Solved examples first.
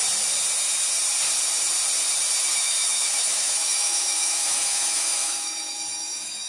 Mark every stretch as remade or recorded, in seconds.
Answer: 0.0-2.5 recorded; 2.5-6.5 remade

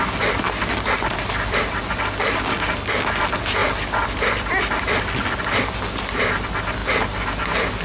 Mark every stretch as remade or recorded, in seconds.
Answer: 0.0-7.8 recorded

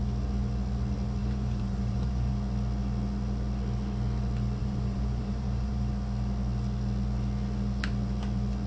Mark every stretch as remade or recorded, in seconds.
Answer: 0.0-1.2 recorded; 1.2-2.3 remade; 2.3-4.6 recorded; 4.6-5.9 remade; 5.9-8.7 recorded

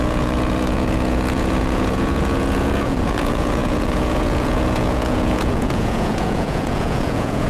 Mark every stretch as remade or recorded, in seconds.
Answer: 0.0-7.5 remade

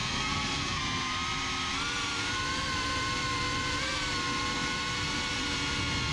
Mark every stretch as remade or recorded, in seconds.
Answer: 0.0-0.8 remade; 0.8-6.1 recorded

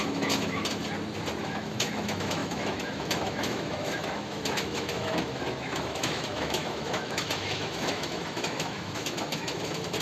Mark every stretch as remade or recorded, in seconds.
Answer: 0.0-0.8 remade; 0.8-1.4 recorded; 1.4-10.0 remade

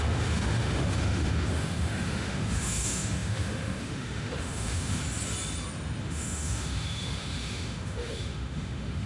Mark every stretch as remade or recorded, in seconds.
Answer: 0.0-5.0 remade; 5.0-6.0 recorded; 6.0-9.1 remade

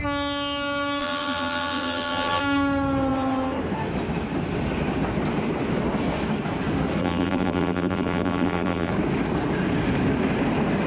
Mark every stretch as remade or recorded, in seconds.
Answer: 0.0-1.0 recorded; 1.0-2.4 remade; 2.4-7.0 recorded; 7.0-8.9 remade; 8.9-10.9 recorded